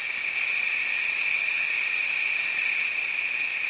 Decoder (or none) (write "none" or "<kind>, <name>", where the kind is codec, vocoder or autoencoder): none